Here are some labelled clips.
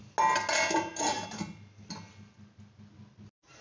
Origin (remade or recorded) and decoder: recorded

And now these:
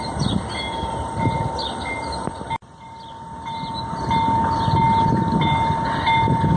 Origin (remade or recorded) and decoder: recorded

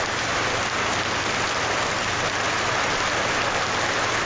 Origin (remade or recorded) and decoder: recorded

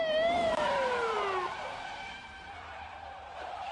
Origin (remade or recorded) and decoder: remade, vocoder, BigVGAN v2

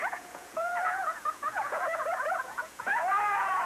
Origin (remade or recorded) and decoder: remade, vocoder, Vocos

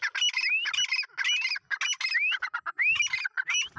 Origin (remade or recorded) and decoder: recorded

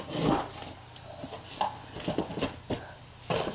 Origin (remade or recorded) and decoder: recorded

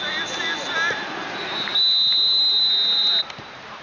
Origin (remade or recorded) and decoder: recorded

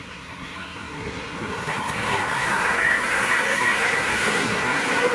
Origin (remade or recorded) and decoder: remade, codec, SNAC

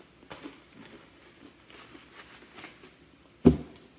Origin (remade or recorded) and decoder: recorded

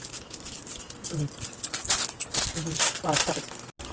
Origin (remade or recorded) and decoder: recorded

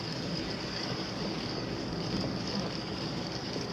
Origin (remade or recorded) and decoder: remade, codec, DAC